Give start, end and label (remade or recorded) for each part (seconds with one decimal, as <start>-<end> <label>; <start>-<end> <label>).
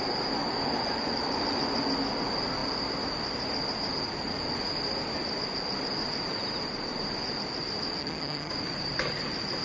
0.0-8.0 recorded; 8.0-8.5 remade; 8.5-9.6 recorded